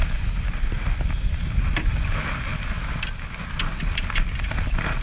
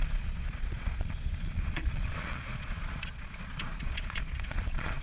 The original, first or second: first